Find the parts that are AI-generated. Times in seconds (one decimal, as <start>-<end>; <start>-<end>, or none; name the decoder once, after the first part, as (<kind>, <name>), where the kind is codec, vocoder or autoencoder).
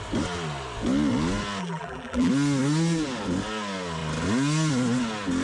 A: 1.6-2.3 (vocoder, BigVGAN v2)